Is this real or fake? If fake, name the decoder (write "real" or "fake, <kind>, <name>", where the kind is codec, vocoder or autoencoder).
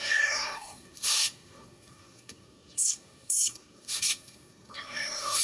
fake, codec, SNAC